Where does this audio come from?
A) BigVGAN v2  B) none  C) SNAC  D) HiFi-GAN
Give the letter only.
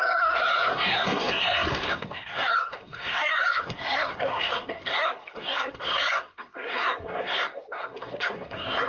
C